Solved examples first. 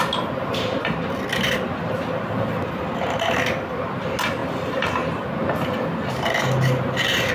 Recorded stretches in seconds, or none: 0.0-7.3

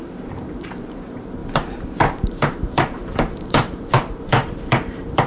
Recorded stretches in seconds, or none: none

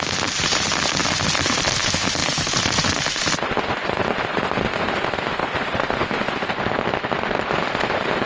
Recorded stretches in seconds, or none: 0.0-1.0; 1.8-2.2; 4.0-8.3

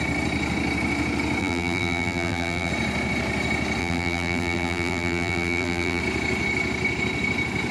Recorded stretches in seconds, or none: 0.0-1.4; 2.7-3.8; 6.0-7.7